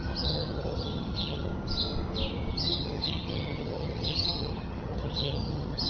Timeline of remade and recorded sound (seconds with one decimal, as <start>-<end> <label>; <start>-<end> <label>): 0.0-1.5 remade; 1.5-2.5 recorded; 2.5-5.9 remade